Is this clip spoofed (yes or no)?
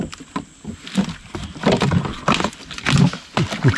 no